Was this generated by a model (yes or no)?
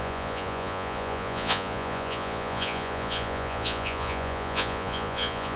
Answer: yes